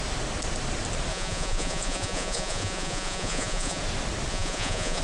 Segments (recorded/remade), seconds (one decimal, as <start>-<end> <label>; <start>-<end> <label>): 0.0-1.1 recorded; 1.1-3.8 remade; 3.8-4.3 recorded; 4.3-5.0 remade

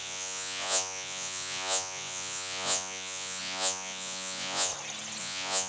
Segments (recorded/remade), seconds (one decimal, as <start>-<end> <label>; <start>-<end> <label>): 0.0-4.7 remade; 4.7-5.2 recorded; 5.2-5.7 remade